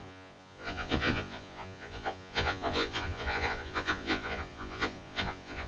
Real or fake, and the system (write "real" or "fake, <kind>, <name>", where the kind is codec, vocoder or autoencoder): fake, vocoder, Vocos